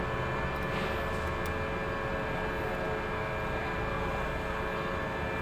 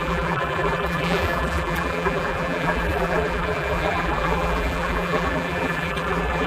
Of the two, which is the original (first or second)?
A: first